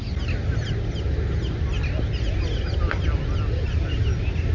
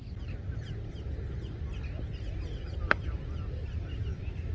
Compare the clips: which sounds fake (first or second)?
second